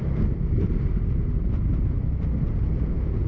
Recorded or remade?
recorded